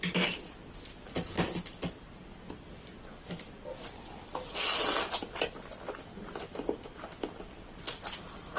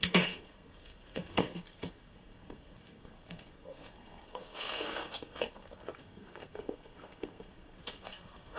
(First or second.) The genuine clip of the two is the first